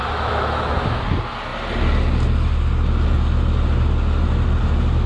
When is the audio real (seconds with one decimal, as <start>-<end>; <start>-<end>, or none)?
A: 1.0-5.1